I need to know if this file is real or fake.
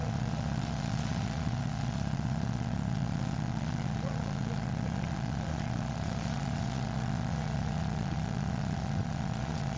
fake